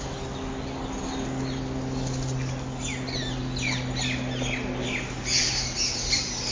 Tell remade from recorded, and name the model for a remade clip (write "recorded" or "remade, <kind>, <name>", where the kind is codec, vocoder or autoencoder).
recorded